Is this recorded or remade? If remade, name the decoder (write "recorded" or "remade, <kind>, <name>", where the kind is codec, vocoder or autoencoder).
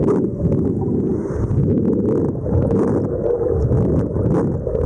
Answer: recorded